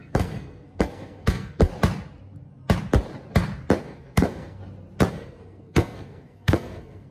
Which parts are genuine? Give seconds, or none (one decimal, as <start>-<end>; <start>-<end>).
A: 1.7-3.8; 4.6-5.1